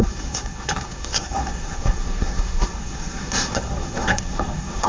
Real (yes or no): no